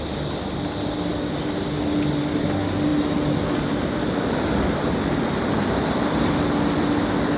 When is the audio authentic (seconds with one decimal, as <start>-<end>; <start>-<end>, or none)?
0.0-7.4